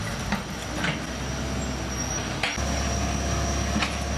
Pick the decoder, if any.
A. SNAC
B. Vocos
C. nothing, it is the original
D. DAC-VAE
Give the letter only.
C